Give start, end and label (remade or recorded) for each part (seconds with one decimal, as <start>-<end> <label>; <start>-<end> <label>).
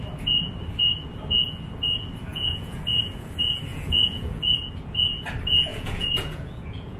0.0-2.3 recorded; 2.3-2.8 remade; 2.8-3.7 recorded; 3.7-4.4 remade; 4.4-5.7 recorded; 5.7-7.0 remade